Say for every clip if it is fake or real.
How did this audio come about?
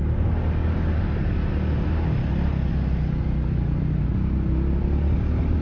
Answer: real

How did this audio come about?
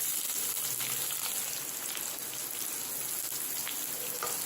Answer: real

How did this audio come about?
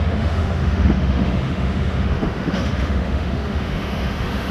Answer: fake